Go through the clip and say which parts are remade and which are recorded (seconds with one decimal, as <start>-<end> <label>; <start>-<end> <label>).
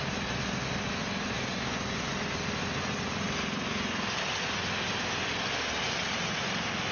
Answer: 0.0-6.9 recorded